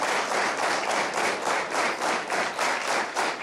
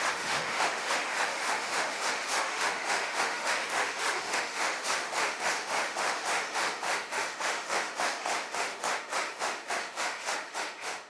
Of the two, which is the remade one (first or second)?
second